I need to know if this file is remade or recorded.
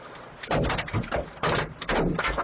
recorded